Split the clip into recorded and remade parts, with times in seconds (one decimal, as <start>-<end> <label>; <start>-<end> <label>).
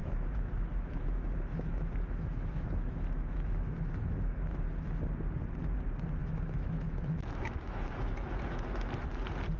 0.0-5.0 remade; 5.0-6.2 recorded; 6.2-8.9 remade; 8.9-9.6 recorded